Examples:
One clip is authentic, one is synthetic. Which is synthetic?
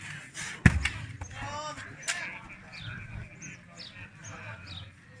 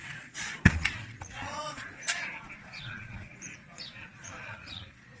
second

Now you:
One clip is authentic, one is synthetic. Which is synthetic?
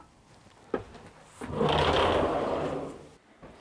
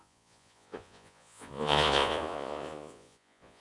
second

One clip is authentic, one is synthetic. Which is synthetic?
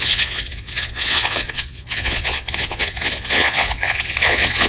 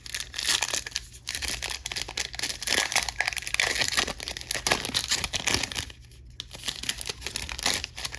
first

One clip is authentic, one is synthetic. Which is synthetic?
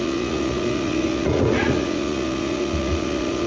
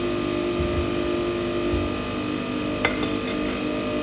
first